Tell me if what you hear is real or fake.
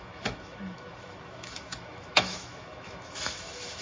fake